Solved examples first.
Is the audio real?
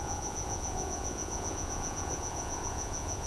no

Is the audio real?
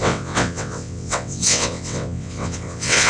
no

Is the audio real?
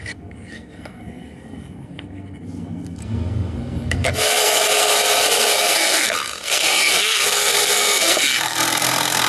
no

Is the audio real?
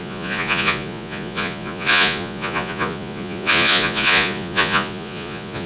no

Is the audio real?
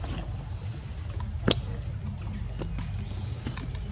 yes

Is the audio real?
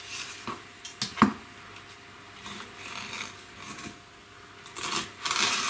yes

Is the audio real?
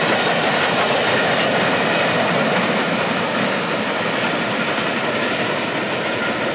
yes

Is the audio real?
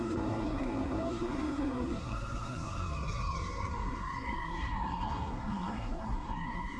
no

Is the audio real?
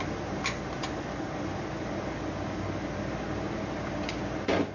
yes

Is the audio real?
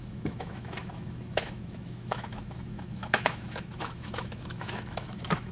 no